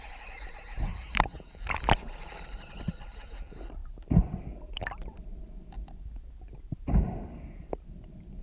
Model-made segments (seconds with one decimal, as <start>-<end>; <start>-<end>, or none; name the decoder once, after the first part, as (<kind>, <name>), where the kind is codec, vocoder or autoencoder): none